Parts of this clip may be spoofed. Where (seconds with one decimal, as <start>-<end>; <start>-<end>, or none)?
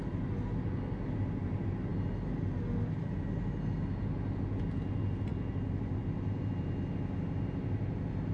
none